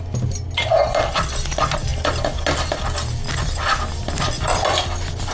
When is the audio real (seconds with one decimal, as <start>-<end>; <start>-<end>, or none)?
0.0-5.3